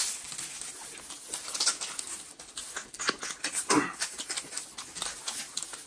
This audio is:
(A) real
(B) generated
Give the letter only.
A